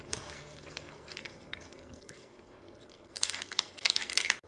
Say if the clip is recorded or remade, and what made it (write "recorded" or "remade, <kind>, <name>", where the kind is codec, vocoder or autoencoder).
remade, codec, SNAC